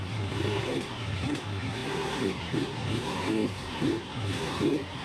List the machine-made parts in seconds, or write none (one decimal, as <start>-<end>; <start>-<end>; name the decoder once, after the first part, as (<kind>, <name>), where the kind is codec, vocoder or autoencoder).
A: 0.0-5.0 (codec, SNAC)